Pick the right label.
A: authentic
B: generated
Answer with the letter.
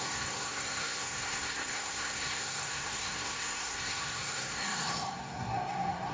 B